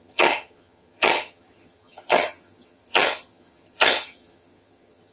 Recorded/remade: remade